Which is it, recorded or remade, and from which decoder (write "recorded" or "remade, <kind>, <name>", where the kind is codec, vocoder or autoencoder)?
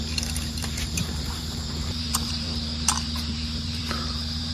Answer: remade, vocoder, BigVGAN v2